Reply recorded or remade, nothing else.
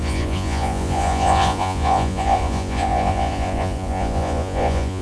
remade